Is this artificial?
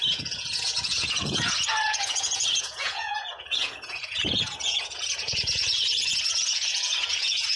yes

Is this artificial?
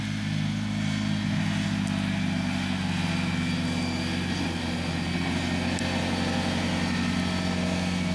no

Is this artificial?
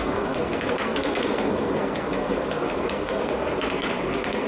yes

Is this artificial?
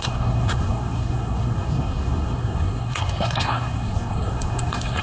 yes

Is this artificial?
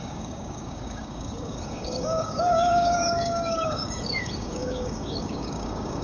yes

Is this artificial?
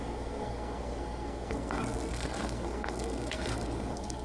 yes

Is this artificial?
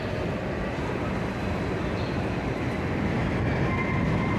no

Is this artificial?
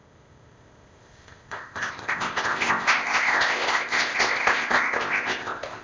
yes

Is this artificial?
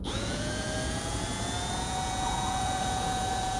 yes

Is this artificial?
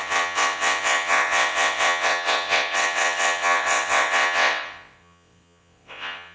yes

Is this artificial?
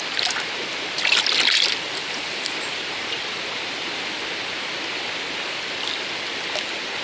no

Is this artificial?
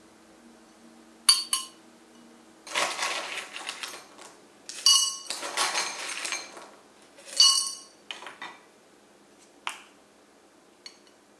no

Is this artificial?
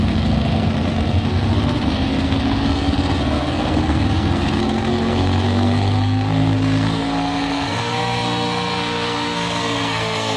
yes